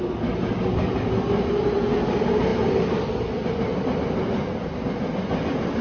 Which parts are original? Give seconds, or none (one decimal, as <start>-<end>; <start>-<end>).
0.0-5.8